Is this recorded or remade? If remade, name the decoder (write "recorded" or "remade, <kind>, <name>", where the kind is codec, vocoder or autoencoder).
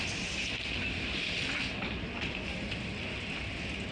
recorded